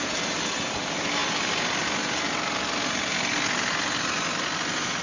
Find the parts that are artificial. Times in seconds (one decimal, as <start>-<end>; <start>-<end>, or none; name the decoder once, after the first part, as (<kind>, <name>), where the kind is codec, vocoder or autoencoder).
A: none